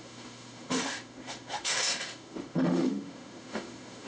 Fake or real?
fake